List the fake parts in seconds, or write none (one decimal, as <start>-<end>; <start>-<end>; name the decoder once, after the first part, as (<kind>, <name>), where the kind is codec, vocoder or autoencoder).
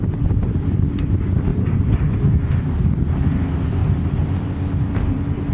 none